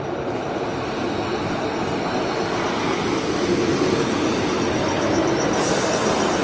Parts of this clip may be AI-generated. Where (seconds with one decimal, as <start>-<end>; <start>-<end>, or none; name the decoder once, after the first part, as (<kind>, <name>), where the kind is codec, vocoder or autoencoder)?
none